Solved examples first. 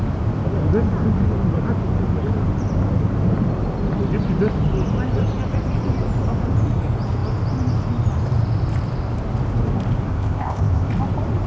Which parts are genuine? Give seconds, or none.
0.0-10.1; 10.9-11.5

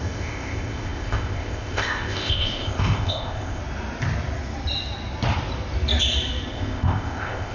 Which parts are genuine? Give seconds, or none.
3.6-6.5

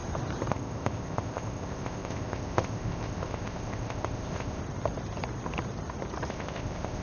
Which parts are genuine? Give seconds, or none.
0.0-0.5; 4.6-6.3